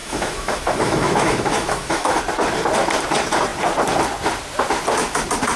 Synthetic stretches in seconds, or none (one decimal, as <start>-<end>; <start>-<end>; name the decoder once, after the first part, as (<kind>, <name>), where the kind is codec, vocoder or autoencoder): 0.0-2.2 (autoencoder, DAC-VAE)